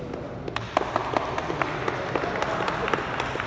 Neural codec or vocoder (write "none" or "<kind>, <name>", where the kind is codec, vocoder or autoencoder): none